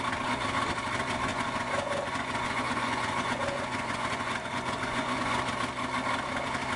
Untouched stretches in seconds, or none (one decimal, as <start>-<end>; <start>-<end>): 0.0-1.3; 5.4-6.8